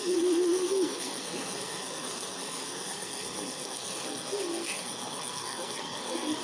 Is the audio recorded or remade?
remade